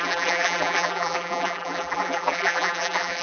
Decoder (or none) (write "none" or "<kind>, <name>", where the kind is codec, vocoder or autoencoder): vocoder, BigVGAN v2